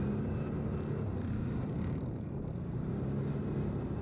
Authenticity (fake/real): real